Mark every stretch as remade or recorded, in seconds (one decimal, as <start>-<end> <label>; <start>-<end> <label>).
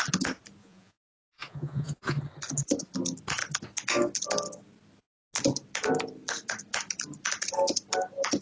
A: 0.0-0.6 recorded; 0.6-2.2 remade; 2.2-8.4 recorded